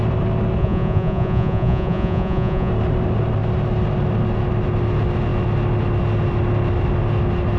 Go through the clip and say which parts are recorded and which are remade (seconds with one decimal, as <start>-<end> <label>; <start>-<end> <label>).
0.0-0.6 recorded; 0.6-2.7 remade; 2.7-7.6 recorded